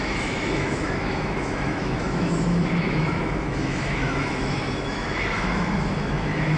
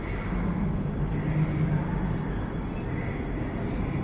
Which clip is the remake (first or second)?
first